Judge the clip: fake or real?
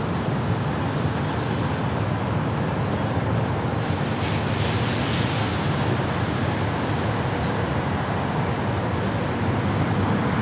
real